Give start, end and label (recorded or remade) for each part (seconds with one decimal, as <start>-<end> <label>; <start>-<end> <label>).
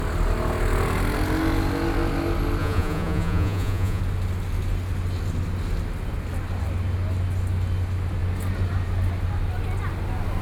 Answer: 0.0-2.6 recorded; 2.6-4.0 remade; 4.0-10.4 recorded